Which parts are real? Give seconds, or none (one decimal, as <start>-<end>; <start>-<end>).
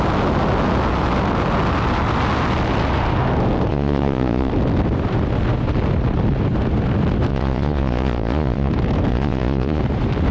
0.0-3.7; 4.5-7.3; 8.7-9.1; 9.8-10.3